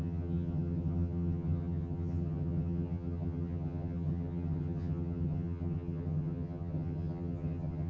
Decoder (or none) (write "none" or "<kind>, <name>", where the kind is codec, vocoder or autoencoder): vocoder, HiFi-GAN